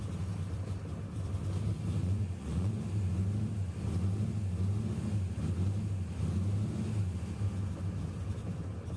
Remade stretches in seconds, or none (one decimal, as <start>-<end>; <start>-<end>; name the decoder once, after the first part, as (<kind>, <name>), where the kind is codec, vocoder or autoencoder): 2.0-2.8 (vocoder, Vocos)